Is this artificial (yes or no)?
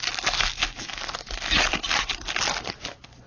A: no